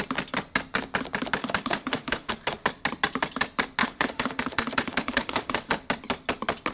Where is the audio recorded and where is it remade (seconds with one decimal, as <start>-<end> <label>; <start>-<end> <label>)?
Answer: 0.0-1.4 recorded; 1.4-2.3 remade; 2.3-3.8 recorded; 3.8-5.7 remade; 5.7-6.7 recorded